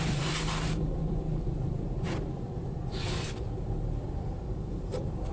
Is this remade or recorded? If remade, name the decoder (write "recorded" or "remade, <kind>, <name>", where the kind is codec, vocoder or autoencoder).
remade, vocoder, BigVGAN v2